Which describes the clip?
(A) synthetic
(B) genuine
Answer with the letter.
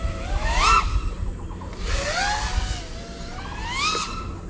B